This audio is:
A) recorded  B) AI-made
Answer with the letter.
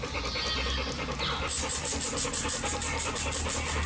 A